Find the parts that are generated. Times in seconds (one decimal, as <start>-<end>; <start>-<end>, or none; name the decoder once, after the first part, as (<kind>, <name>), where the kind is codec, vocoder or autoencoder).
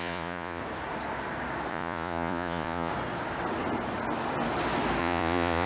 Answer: 0.0-0.6 (vocoder, Vocos); 1.7-2.9; 5.0-5.7